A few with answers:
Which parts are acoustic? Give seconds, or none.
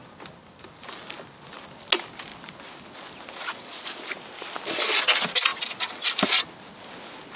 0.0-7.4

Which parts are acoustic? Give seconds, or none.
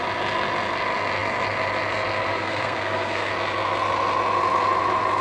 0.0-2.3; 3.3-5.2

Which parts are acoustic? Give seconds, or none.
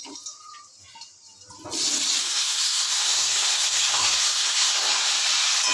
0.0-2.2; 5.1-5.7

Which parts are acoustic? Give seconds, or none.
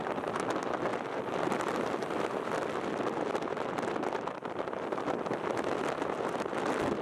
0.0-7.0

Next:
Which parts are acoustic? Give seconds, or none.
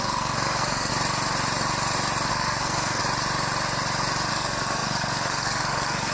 0.9-2.3; 3.0-4.3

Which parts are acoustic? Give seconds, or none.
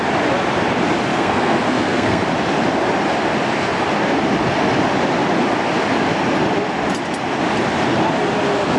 0.0-1.1; 2.2-8.8